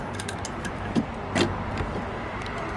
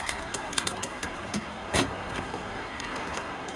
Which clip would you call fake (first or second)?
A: second